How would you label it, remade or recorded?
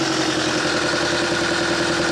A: recorded